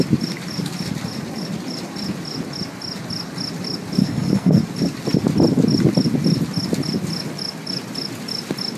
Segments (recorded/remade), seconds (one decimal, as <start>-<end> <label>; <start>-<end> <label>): 0.0-4.0 recorded; 4.0-4.6 remade; 4.6-8.8 recorded